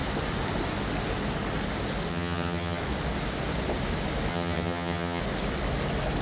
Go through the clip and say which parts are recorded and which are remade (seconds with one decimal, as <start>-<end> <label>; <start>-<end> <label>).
0.0-2.1 recorded; 2.1-2.8 remade; 2.8-4.3 recorded; 4.3-5.2 remade; 5.2-6.2 recorded